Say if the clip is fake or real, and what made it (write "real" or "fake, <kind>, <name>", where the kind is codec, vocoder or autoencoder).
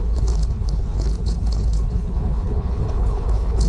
fake, codec, HILCodec